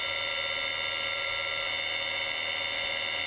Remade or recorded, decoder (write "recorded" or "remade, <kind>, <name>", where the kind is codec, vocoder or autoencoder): recorded